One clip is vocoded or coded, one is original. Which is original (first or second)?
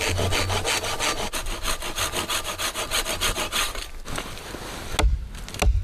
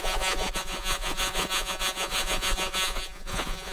first